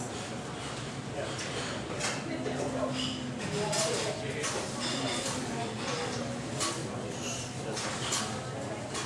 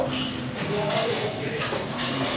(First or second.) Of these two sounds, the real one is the first